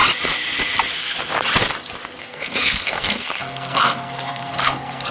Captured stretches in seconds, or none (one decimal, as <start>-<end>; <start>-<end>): 0.0-2.2